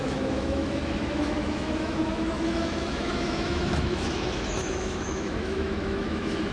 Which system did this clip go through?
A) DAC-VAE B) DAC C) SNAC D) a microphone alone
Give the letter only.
A